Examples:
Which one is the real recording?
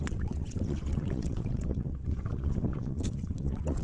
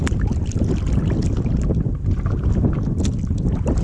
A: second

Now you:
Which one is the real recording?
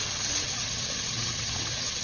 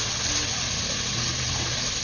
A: second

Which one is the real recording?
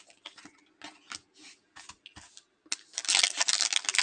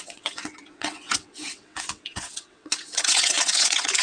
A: first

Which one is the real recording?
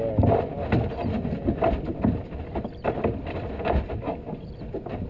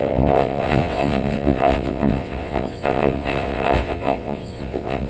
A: first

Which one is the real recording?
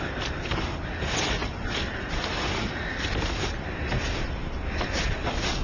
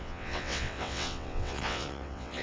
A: first